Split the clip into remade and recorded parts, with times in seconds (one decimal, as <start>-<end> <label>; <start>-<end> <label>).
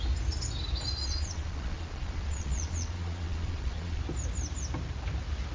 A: 0.0-1.0 recorded; 1.0-4.0 remade; 4.0-5.5 recorded